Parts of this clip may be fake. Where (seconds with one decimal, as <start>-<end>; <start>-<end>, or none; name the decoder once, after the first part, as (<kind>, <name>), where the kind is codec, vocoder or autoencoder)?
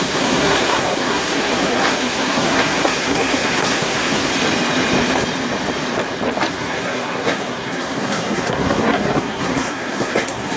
0.0-4.3 (codec, SNAC); 6.5-10.6